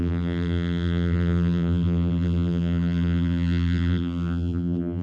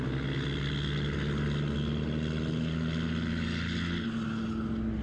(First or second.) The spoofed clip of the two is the first